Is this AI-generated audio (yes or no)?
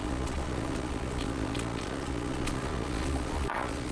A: yes